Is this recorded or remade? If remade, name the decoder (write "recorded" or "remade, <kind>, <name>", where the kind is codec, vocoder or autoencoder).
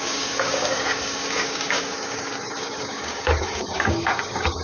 remade, codec, DAC